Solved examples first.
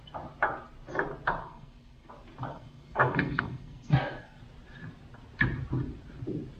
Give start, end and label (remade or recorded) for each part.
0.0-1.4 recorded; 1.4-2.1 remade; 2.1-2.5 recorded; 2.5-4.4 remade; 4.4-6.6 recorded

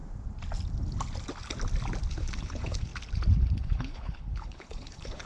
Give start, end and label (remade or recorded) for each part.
0.0-2.1 recorded; 2.1-2.9 remade; 2.9-3.5 recorded; 3.5-5.3 remade

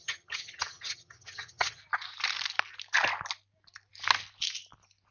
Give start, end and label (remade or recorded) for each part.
0.0-1.8 remade; 1.8-5.1 recorded

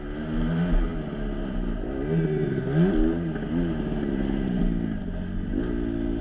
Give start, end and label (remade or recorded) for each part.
0.0-6.2 recorded